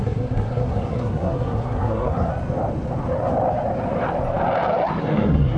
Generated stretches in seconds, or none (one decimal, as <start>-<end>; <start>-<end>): 0.0-2.3; 5.0-5.6